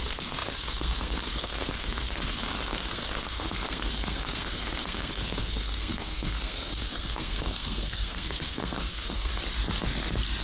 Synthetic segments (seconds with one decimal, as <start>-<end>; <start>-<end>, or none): 0.0-9.3